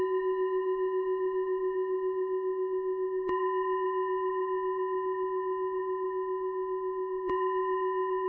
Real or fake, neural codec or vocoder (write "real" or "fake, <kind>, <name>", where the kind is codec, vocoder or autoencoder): fake, vocoder, Vocos